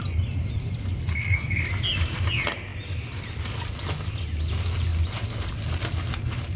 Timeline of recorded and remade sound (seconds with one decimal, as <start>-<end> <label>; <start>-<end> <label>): 0.0-1.0 recorded; 1.0-1.6 remade; 1.6-6.6 recorded